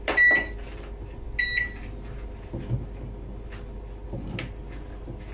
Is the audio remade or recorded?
recorded